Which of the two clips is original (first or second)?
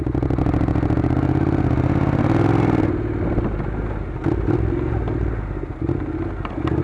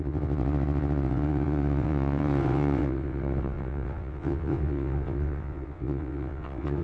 first